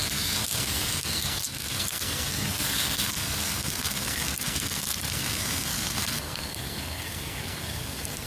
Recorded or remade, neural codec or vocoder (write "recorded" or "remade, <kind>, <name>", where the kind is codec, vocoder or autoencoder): remade, codec, SNAC